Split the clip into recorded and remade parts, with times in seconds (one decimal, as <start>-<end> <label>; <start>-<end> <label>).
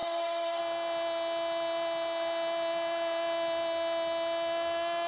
0.0-0.6 remade; 0.6-5.1 recorded